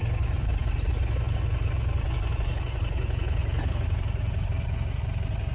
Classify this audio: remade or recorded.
recorded